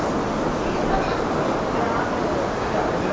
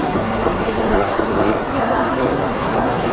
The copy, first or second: second